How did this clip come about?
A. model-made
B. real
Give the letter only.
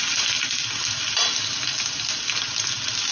B